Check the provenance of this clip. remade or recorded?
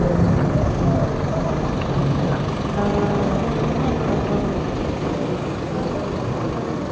recorded